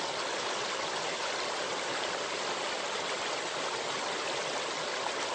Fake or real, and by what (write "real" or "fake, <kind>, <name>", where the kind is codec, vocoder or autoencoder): real